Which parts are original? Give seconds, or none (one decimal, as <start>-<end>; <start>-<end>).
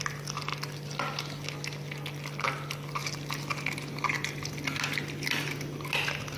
0.0-6.4